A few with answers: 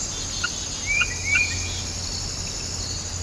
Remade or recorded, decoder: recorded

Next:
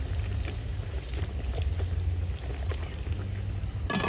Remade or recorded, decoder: recorded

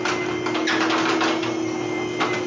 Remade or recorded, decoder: recorded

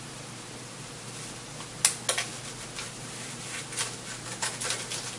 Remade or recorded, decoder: recorded